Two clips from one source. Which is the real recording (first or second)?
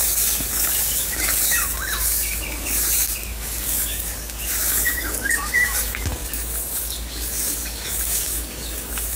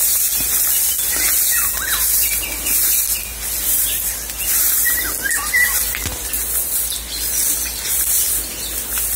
second